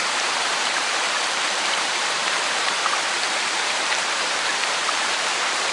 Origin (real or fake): fake